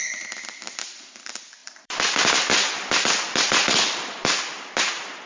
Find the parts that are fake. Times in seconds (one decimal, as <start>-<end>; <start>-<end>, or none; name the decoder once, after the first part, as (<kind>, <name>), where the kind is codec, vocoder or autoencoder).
1.6-4.8 (vocoder, BigVGAN v2)